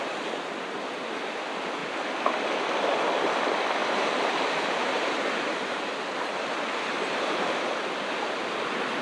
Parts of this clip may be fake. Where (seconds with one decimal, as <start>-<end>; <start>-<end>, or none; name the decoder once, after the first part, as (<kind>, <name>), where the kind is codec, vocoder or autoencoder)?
3.8-8.5 (vocoder, BigVGAN v2)